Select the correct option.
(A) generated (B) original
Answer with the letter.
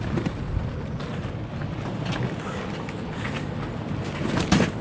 B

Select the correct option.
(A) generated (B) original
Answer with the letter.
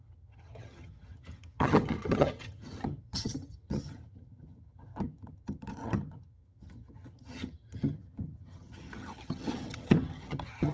A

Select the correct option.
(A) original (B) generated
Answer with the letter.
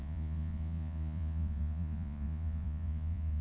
B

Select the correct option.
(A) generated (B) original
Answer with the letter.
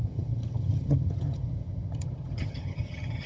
A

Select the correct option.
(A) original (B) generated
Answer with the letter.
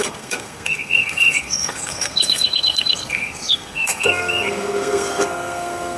B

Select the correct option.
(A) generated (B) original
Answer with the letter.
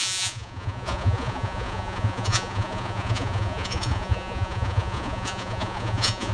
A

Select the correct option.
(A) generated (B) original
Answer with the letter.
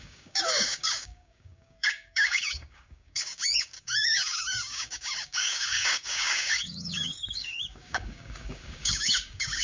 A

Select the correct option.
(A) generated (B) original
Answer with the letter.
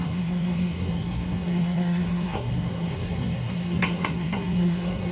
A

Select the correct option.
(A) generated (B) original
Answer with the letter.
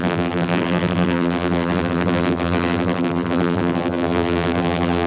A